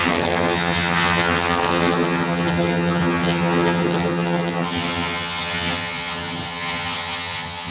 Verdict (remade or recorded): remade